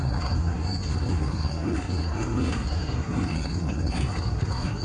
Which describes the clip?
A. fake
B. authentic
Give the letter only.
A